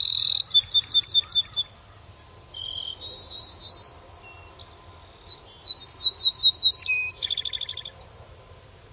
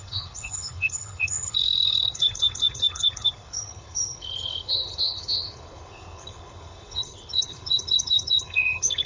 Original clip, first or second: first